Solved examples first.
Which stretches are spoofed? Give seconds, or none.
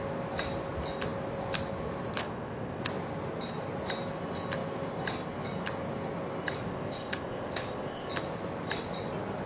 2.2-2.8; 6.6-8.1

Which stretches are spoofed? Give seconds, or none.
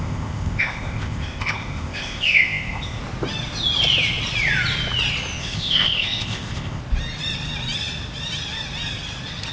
0.0-3.0; 5.4-6.8